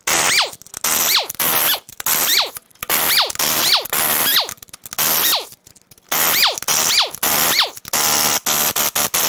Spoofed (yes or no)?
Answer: no